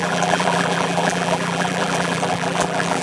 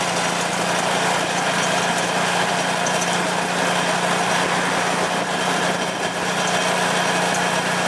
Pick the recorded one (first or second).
second